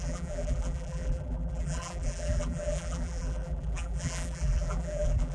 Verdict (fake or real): fake